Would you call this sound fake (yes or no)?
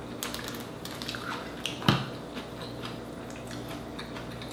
no